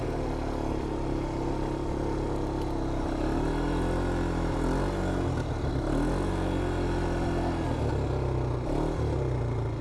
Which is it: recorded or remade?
recorded